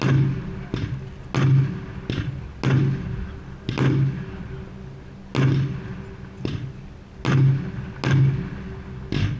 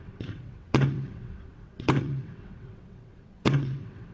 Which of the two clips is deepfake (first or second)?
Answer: second